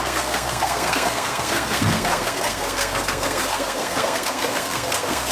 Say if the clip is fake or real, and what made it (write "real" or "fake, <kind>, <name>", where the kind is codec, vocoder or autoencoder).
fake, codec, SNAC